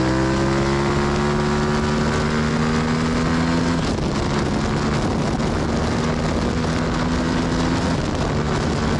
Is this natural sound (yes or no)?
yes